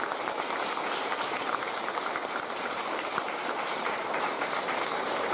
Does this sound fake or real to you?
fake